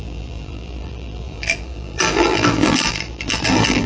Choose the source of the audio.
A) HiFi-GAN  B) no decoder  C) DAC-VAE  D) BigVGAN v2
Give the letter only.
D